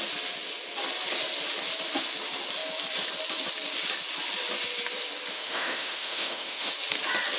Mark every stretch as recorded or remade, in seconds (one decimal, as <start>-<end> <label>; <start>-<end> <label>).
0.0-5.3 recorded; 5.3-6.7 remade; 6.7-7.4 recorded